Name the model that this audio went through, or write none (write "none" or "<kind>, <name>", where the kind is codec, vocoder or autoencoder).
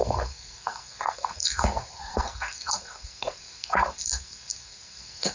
codec, SNAC